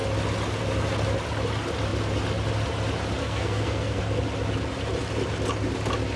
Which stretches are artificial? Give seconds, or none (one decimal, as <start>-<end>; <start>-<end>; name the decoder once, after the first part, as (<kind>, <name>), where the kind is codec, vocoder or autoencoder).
3.2-4.0 (codec, SNAC)